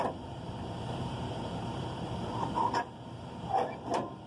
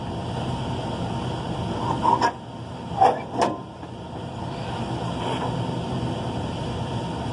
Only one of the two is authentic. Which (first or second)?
second